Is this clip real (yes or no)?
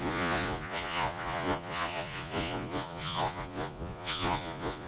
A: no